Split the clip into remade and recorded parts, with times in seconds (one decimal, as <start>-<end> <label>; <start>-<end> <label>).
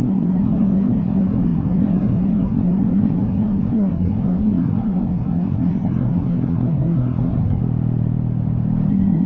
0.0-7.6 remade; 7.6-8.9 recorded; 8.9-9.3 remade